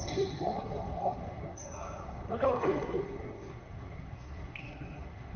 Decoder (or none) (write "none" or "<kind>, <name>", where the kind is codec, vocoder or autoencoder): codec, SNAC